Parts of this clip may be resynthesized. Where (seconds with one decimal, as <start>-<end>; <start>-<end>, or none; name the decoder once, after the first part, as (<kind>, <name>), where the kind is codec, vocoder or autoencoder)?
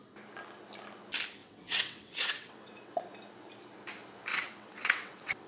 1.4-3.0 (vocoder, WaveNeXt); 4.3-5.5